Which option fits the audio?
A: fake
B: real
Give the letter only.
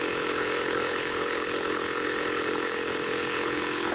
A